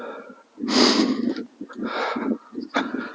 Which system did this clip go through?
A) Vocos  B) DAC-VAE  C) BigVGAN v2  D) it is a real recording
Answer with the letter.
D